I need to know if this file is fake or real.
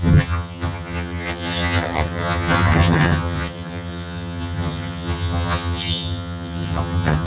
fake